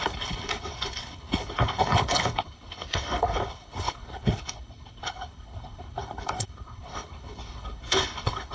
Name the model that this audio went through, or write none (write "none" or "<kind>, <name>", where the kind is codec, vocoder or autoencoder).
codec, HILCodec